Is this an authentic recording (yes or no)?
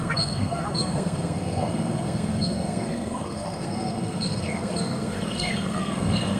no